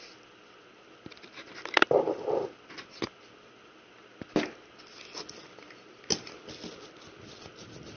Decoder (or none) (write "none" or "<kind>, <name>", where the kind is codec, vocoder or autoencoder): none